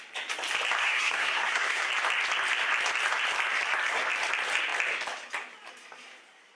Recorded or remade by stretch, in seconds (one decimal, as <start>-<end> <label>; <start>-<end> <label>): 0.0-0.8 recorded; 0.8-1.9 remade; 1.9-6.6 recorded